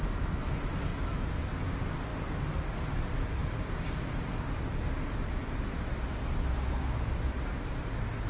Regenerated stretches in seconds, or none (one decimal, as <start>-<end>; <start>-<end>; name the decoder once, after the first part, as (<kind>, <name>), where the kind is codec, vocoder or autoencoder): none

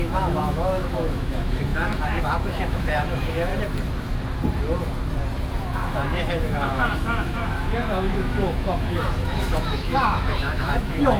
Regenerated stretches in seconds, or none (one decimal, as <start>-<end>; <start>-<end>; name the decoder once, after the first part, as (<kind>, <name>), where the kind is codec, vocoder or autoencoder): 0.0-3.5 (autoencoder, DAC-VAE); 5.6-11.2

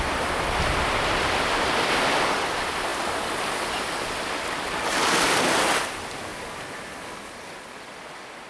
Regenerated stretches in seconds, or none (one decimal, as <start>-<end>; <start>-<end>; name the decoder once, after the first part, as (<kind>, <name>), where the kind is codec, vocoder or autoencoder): none

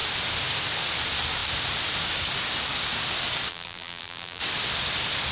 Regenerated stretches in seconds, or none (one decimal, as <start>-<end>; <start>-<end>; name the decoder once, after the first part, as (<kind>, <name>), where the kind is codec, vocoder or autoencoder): 3.5-4.4 (vocoder, BigVGAN v2)

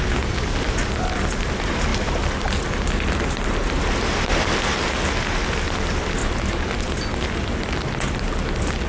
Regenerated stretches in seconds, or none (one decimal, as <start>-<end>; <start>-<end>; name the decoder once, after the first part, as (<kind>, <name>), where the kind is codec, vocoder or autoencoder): none

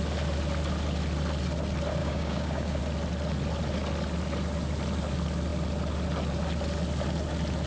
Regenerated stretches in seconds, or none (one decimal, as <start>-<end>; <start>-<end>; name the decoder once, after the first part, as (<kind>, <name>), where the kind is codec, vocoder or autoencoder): 2.0-2.8 (codec, DAC)